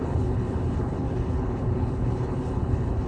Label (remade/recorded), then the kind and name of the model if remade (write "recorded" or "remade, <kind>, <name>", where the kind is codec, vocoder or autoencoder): remade, codec, HILCodec